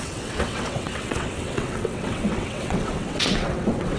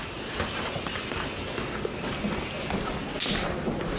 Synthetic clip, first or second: first